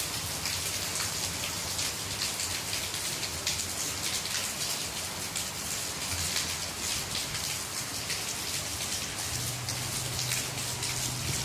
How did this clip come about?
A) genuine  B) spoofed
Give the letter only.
A